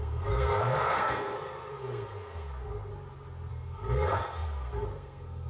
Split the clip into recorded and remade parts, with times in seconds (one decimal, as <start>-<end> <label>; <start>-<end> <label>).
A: 0.0-2.9 remade; 2.9-3.5 recorded; 3.5-5.5 remade